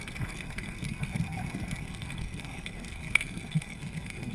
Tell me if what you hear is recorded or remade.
remade